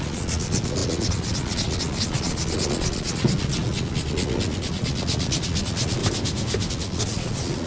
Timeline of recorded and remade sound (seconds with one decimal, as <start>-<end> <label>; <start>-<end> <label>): 0.0-6.0 remade; 6.0-6.7 recorded; 6.7-7.7 remade